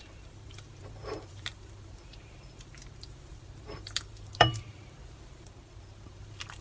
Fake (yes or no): yes